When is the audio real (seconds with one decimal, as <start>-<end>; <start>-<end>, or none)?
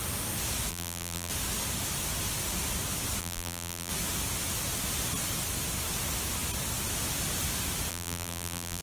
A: 0.0-0.7; 1.3-3.2; 3.9-7.9